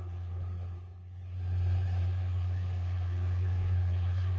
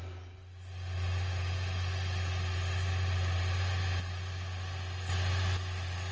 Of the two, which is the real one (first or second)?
second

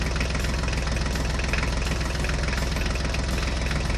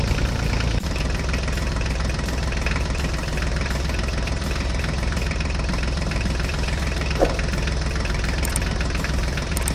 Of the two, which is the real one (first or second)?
first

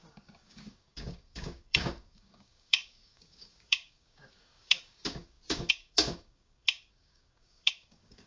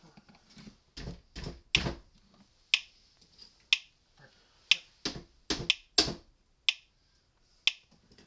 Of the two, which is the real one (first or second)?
second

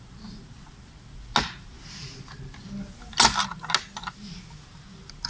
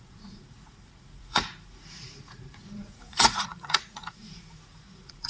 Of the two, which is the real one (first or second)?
first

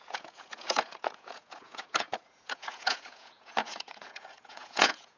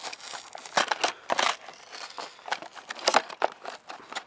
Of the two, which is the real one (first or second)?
second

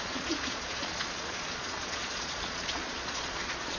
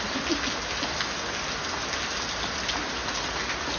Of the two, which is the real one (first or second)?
second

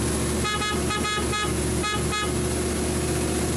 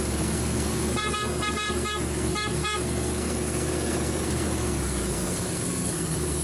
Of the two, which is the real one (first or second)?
first